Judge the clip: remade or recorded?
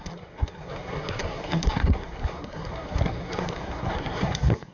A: remade